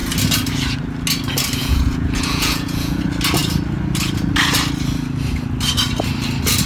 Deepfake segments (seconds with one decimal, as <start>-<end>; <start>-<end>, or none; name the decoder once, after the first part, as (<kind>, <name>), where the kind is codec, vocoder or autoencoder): 1.6-3.0 (vocoder, Vocos)